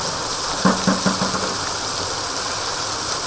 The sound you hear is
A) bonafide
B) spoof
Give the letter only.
A